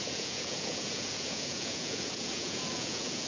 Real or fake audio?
fake